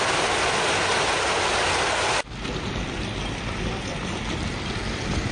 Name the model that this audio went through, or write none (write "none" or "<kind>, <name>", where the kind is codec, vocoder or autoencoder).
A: none